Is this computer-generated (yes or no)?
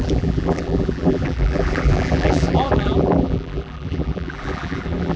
yes